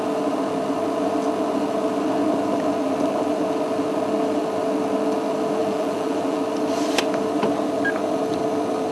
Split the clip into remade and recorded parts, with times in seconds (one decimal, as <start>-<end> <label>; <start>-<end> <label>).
0.0-5.6 recorded; 5.6-6.4 remade; 6.4-8.9 recorded